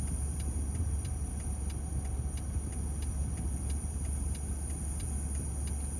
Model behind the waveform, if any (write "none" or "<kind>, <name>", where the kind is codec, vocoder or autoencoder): none